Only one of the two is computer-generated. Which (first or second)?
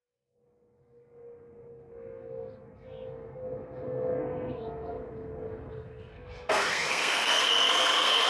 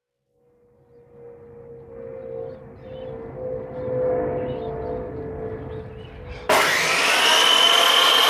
first